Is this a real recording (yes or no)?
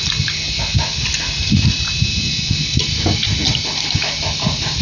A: yes